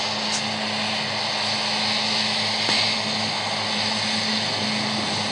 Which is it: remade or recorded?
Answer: recorded